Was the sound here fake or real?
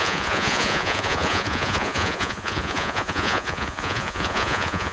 fake